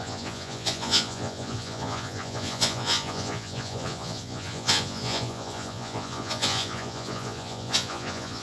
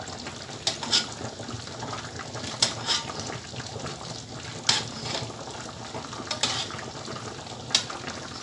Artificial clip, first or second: first